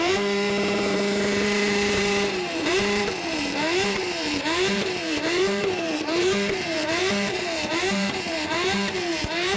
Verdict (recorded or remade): remade